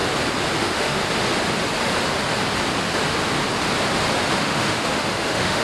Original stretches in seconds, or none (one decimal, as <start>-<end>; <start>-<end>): 0.0-0.6; 1.0-4.4